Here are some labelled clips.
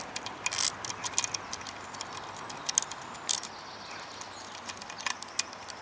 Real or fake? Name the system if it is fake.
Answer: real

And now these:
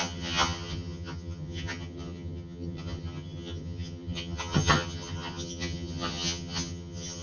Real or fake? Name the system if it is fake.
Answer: fake, vocoder, HiFi-GAN